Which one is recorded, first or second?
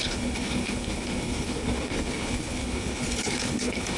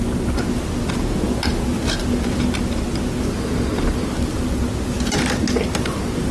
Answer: second